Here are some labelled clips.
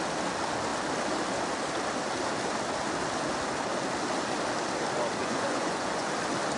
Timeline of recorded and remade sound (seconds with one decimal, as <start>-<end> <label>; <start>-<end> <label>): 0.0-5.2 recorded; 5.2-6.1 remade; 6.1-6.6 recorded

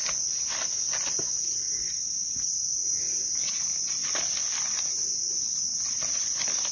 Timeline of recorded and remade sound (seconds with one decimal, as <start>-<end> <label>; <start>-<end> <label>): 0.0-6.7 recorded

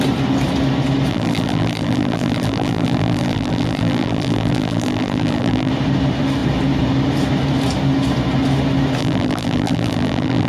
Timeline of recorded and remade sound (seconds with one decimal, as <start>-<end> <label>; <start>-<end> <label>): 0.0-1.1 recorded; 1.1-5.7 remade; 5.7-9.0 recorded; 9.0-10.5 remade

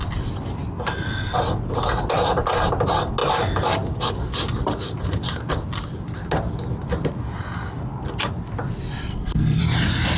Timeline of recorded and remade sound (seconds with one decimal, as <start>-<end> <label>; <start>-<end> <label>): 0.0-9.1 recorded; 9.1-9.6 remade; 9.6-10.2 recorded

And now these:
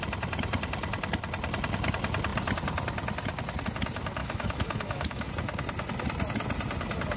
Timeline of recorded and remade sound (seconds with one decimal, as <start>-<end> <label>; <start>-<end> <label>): 0.0-4.2 recorded; 4.2-5.3 remade; 5.3-7.2 recorded

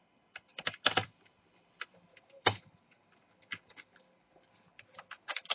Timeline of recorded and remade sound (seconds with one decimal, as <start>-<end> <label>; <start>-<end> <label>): 0.0-0.5 recorded; 0.5-3.8 remade; 3.8-5.5 recorded